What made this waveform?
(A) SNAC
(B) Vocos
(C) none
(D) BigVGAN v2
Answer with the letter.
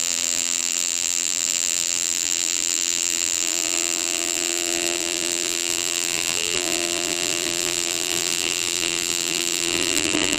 D